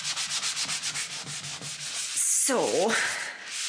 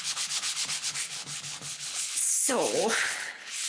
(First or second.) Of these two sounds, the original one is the first